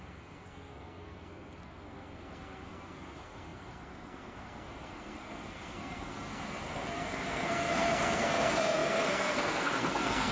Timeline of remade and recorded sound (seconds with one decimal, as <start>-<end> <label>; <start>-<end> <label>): 0.0-10.3 remade